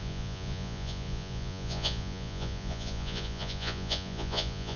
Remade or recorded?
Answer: remade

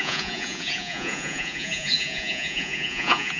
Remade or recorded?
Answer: remade